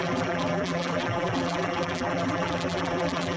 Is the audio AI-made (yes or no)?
yes